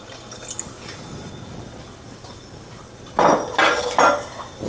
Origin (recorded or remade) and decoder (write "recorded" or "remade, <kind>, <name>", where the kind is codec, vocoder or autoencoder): recorded